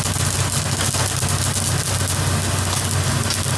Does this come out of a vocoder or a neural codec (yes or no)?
no